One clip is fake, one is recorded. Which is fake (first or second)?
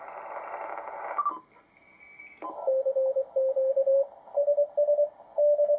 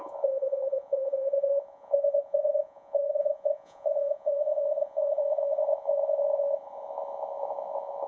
second